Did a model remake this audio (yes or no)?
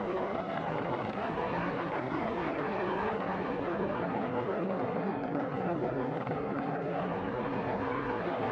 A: yes